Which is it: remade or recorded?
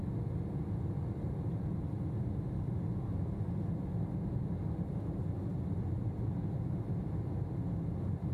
recorded